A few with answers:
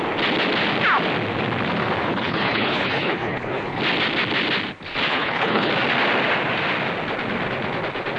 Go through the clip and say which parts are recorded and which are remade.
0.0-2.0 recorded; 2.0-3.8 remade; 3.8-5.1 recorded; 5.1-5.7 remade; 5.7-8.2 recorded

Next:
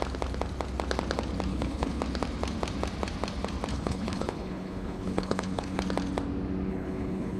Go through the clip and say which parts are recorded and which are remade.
0.0-1.5 recorded; 1.5-2.0 remade; 2.0-3.7 recorded; 3.7-5.8 remade; 5.8-6.7 recorded; 6.7-7.4 remade

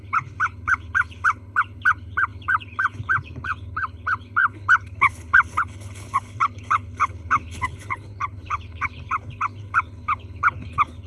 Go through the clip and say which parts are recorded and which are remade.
0.0-11.1 remade

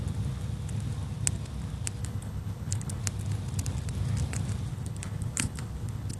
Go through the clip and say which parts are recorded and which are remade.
0.0-2.0 recorded; 2.0-3.0 remade; 3.0-4.7 recorded; 4.7-6.2 remade